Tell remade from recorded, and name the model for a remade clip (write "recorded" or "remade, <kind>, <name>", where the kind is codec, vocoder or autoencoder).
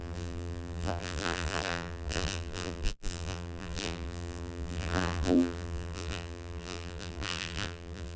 remade, vocoder, BigVGAN v2